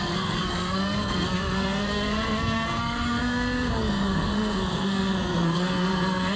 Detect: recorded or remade remade